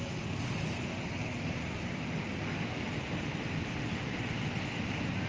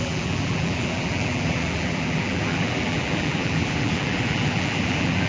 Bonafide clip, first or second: first